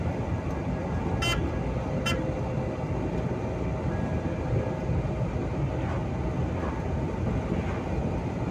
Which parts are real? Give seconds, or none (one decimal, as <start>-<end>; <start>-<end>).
0.0-8.5